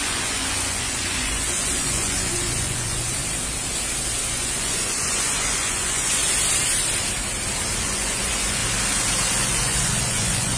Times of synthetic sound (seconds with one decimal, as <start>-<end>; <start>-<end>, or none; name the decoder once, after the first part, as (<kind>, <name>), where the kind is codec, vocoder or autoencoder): 0.0-3.2 (vocoder, Vocos); 4.3-6.2; 7.8-8.6; 9.4-10.6